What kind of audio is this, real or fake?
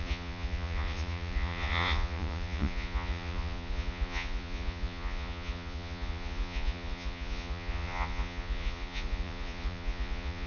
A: fake